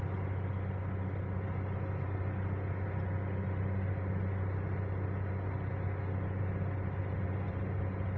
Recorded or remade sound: recorded